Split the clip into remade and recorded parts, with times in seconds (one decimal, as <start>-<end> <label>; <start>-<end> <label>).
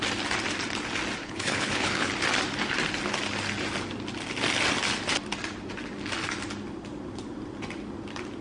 0.0-1.2 recorded; 1.2-2.1 remade; 2.1-8.4 recorded